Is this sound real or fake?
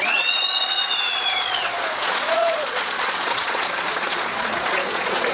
fake